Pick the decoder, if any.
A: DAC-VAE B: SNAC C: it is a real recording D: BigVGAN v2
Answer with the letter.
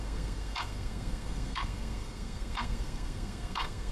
B